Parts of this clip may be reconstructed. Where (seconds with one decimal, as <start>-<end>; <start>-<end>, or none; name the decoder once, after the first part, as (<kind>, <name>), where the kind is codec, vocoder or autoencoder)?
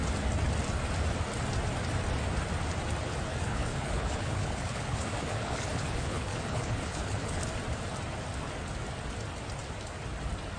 3.3-7.4 (codec, HILCodec)